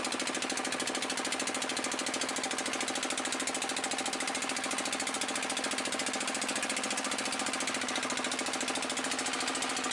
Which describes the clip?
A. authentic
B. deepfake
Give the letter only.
A